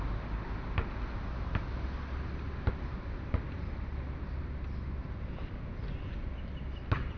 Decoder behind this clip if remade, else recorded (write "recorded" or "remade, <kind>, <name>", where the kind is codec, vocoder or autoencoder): recorded